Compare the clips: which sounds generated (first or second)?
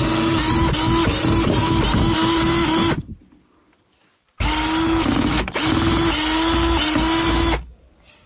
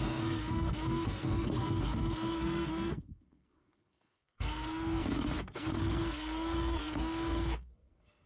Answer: second